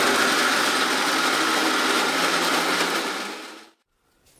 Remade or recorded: recorded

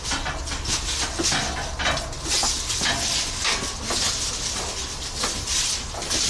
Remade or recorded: recorded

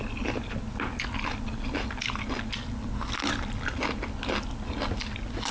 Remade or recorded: recorded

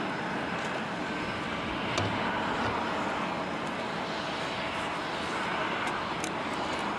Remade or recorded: recorded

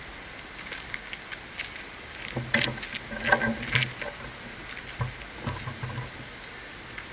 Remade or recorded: recorded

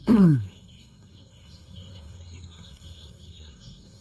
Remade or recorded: remade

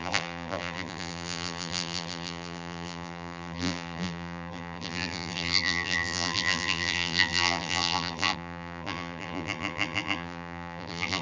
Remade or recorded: remade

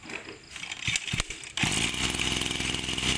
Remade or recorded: recorded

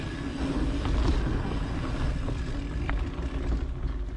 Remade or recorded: recorded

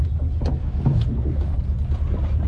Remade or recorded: recorded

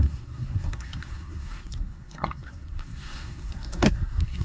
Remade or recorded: remade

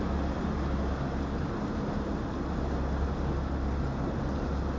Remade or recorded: recorded